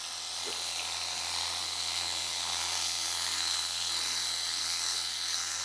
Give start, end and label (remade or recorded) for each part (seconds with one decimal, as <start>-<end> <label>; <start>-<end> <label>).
0.0-1.6 recorded; 1.6-3.9 remade; 3.9-4.5 recorded; 4.5-5.6 remade

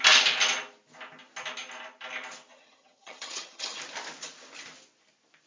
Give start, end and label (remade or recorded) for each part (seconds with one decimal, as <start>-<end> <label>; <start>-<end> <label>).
0.0-2.5 recorded; 2.5-3.8 remade; 3.8-5.5 recorded

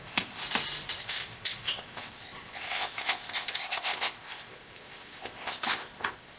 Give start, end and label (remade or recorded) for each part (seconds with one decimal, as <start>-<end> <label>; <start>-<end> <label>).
0.0-0.4 remade; 0.4-1.0 recorded; 1.0-6.4 remade

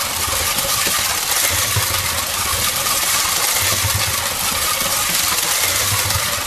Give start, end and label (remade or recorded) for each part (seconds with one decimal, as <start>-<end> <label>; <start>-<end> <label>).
0.0-6.5 recorded

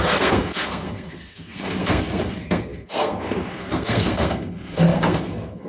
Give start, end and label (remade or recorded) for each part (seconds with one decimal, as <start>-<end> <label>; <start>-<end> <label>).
0.0-5.7 remade

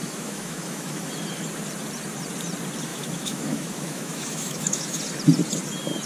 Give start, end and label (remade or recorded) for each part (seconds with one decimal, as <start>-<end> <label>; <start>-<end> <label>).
0.0-1.1 remade; 1.1-2.9 recorded; 2.9-5.0 remade; 5.0-6.1 recorded

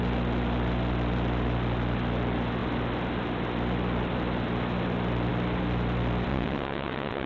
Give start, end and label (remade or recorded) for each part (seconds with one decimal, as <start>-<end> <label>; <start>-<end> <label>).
0.0-6.3 recorded; 6.3-7.3 remade